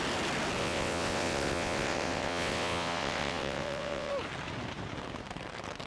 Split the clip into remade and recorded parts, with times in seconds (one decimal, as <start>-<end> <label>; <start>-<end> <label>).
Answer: 0.0-0.6 recorded; 0.6-4.1 remade; 4.1-5.9 recorded